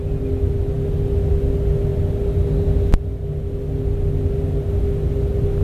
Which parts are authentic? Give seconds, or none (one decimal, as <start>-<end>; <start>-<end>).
0.0-5.6